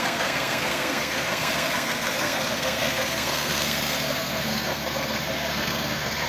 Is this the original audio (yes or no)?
no